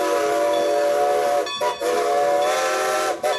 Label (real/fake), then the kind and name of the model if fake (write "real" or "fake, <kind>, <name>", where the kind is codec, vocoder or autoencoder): real